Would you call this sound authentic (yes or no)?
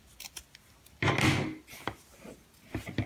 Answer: yes